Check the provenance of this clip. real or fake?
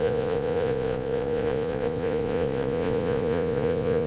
fake